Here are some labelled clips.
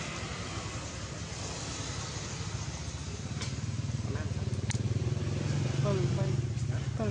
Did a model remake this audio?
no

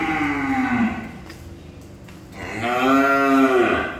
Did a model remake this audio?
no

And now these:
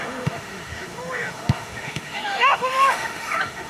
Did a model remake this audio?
yes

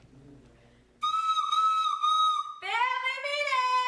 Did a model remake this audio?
no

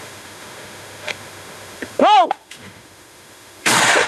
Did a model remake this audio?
yes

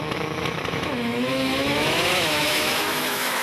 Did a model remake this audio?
yes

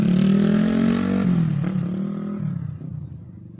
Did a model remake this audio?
no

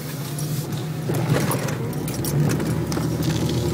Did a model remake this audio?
no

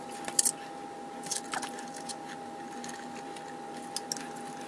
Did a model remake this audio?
no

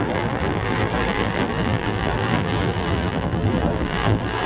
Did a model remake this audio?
yes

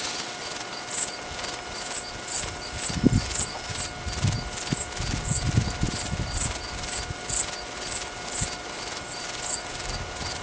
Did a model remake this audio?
no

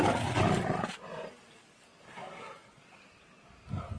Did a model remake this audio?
no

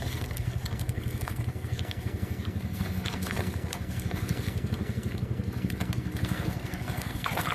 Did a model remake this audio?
yes